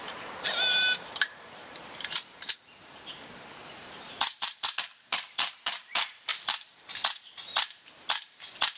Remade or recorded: remade